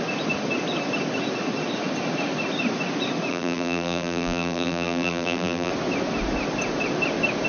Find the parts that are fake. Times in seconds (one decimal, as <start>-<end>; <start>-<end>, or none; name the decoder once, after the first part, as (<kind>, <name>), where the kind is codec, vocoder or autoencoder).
3.3-5.7 (vocoder, BigVGAN v2)